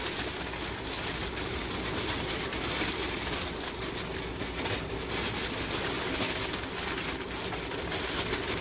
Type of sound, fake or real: real